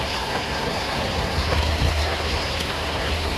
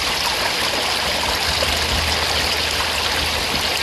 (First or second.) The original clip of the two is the second